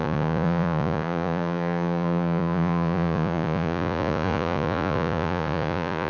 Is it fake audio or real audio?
fake